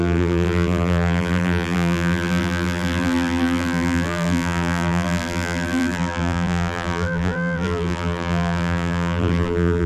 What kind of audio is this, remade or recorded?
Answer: remade